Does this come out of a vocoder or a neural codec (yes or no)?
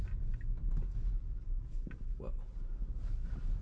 no